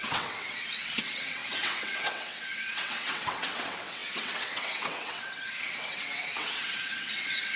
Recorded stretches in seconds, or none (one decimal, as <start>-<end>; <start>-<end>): none